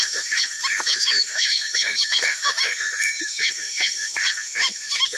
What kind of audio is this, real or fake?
fake